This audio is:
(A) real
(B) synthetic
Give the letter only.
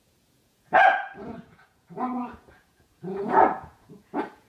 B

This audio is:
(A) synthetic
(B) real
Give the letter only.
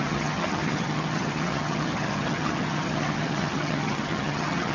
A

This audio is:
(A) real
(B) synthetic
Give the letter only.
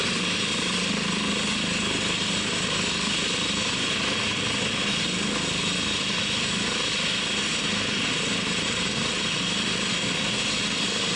A